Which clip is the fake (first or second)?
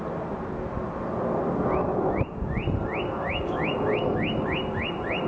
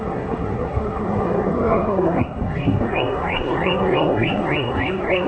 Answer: second